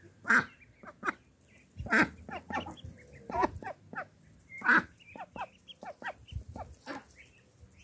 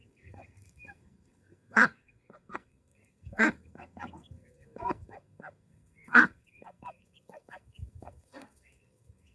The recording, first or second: first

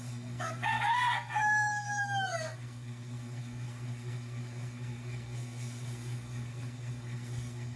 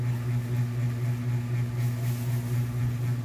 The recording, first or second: second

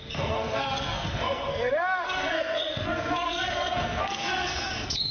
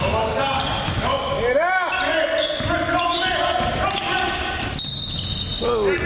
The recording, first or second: second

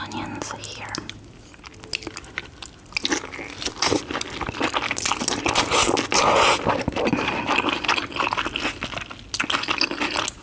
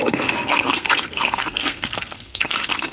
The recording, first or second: first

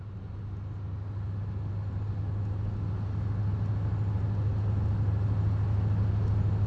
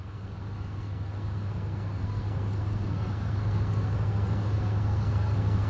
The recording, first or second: first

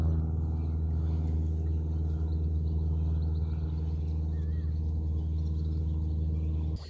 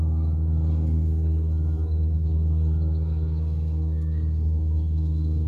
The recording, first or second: first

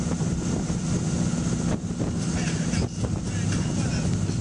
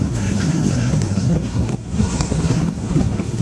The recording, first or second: first